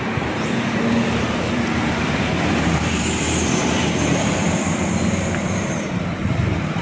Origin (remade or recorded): remade